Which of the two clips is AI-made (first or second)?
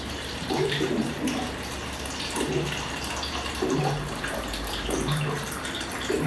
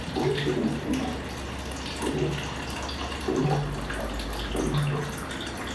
first